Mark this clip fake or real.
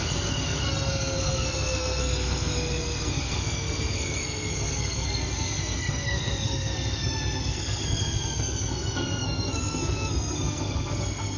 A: fake